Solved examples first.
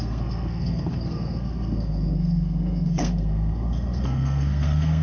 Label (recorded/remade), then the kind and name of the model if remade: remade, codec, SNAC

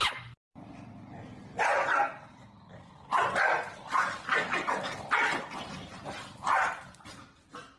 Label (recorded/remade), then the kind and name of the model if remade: recorded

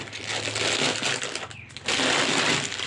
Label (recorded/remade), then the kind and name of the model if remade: recorded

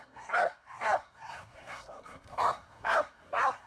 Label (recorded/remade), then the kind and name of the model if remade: remade, codec, SNAC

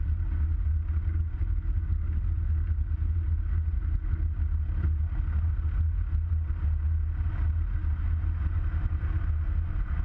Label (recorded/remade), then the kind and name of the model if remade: recorded